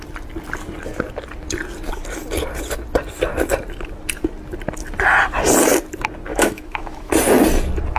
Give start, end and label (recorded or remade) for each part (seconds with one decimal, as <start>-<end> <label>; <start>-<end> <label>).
0.0-6.3 recorded; 6.3-7.1 remade; 7.1-8.0 recorded